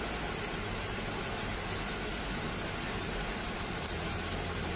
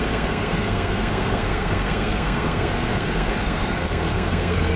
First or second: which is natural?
first